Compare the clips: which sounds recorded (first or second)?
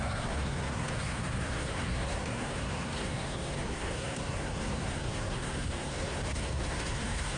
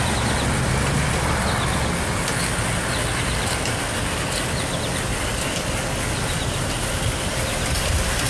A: second